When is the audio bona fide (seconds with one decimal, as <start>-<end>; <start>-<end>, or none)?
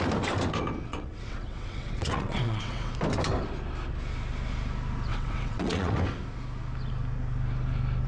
0.0-0.9; 2.9-5.1; 6.0-8.1